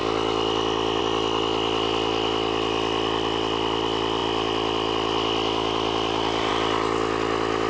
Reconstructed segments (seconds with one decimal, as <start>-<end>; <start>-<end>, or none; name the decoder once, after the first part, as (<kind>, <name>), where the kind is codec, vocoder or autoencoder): none